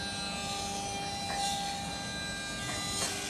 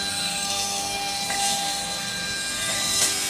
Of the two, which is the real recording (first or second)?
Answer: first